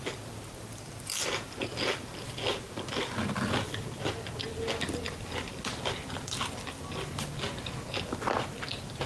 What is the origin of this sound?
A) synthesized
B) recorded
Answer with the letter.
B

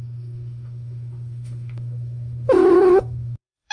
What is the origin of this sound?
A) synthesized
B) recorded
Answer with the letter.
A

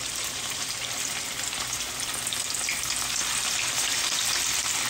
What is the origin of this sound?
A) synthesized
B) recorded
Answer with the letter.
B